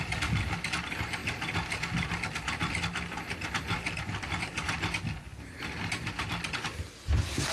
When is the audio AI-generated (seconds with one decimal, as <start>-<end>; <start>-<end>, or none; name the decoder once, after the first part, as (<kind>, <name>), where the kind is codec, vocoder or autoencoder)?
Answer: none